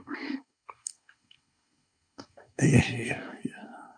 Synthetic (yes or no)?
yes